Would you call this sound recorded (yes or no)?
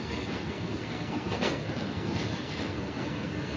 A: no